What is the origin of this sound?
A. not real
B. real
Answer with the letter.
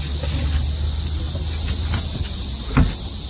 B